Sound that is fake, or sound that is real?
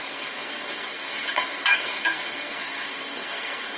fake